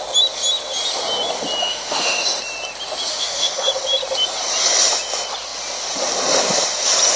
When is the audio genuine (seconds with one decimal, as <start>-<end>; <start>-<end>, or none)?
0.0-1.6; 2.4-3.1; 3.7-7.2